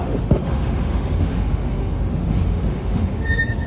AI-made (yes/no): yes